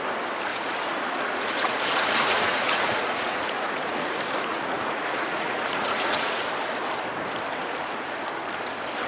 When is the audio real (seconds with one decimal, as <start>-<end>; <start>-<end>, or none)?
0.0-0.5; 4.1-4.5; 6.4-7.6; 8.2-9.1